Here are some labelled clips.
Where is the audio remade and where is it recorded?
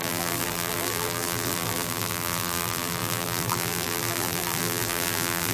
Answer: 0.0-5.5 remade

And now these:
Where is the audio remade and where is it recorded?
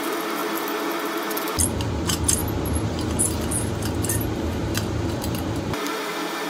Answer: 0.0-0.4 remade; 0.4-1.3 recorded; 1.3-2.4 remade; 2.4-3.2 recorded; 3.2-6.5 remade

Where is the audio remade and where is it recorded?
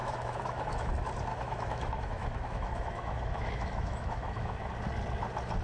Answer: 0.0-0.9 remade; 0.9-1.3 recorded; 1.3-4.7 remade; 4.7-5.6 recorded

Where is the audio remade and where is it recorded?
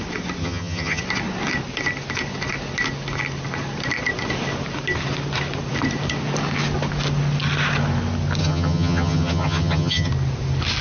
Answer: 0.0-0.4 recorded; 0.4-1.0 remade; 1.0-8.4 recorded; 8.4-10.1 remade; 10.1-10.8 recorded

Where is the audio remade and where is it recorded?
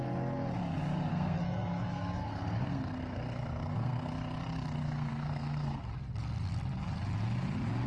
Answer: 0.0-1.1 recorded; 1.1-4.1 remade; 4.1-4.8 recorded; 4.8-5.8 remade; 5.8-7.9 recorded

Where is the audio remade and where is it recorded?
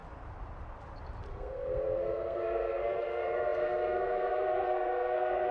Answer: 0.0-1.3 recorded; 1.3-5.5 remade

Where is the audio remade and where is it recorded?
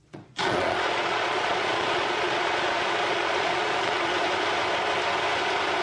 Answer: 0.0-4.1 remade; 4.1-5.8 recorded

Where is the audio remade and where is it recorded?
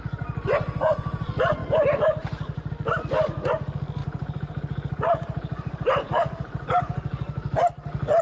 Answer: 0.0-1.6 recorded; 1.6-2.7 remade; 2.7-4.0 recorded; 4.0-6.8 remade; 6.8-8.2 recorded